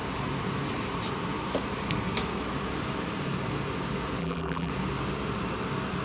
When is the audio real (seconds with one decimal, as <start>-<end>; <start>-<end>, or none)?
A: 0.0-4.2; 4.7-6.0